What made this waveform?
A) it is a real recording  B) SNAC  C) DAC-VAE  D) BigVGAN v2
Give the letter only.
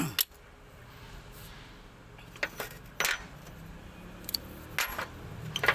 A